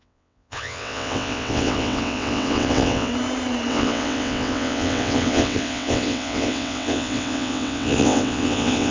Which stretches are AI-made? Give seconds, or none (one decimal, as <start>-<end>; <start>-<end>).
0.0-3.1; 3.7-8.9